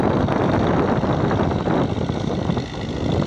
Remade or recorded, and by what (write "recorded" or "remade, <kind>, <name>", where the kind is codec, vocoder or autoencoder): recorded